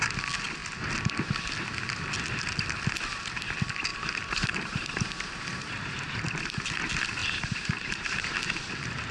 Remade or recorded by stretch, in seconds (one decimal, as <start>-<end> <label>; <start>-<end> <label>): 0.0-3.9 recorded; 3.9-6.4 remade; 6.4-7.2 recorded; 7.2-8.6 remade; 8.6-9.1 recorded